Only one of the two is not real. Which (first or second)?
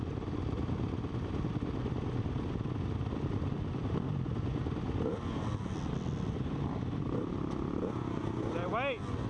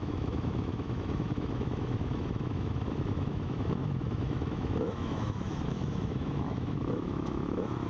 second